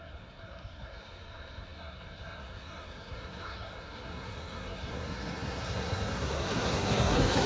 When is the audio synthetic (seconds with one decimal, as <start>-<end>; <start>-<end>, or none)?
0.0-7.5